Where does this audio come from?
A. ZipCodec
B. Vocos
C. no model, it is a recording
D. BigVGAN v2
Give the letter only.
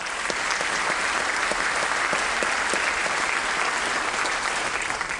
C